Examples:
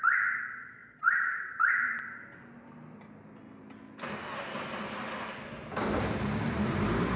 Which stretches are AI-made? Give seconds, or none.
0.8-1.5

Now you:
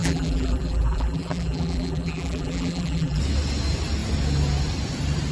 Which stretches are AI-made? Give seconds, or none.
0.0-3.2

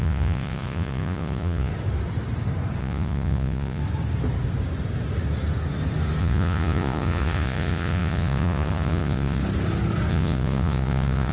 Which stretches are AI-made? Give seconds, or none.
0.0-1.7; 2.8-3.8; 6.2-9.4; 10.1-11.3

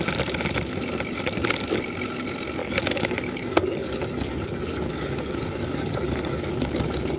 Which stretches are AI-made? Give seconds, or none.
2.6-7.2